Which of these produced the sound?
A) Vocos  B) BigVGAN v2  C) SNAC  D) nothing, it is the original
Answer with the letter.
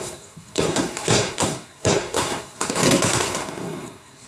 C